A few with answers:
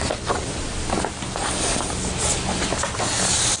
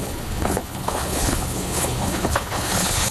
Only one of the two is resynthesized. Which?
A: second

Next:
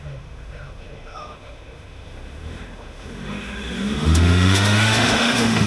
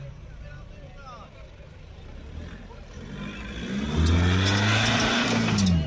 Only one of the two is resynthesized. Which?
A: first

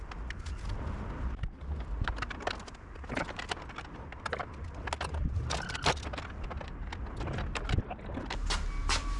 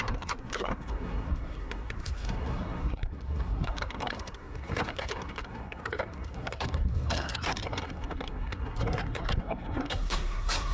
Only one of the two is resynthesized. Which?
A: second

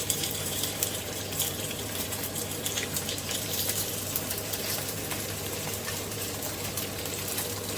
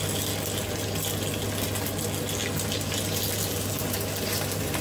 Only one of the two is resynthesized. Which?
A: first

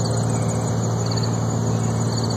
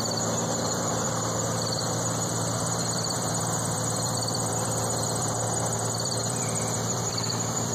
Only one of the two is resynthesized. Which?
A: second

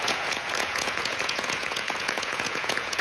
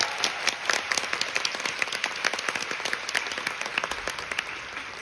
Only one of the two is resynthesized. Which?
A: first